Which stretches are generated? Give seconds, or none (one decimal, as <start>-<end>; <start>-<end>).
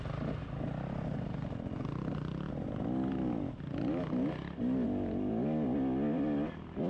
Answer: none